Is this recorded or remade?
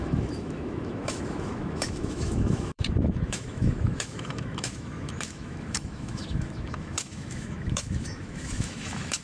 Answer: remade